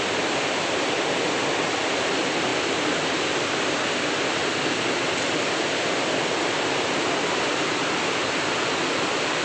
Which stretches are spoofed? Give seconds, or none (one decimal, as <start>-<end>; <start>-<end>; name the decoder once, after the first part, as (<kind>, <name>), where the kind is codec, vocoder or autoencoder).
none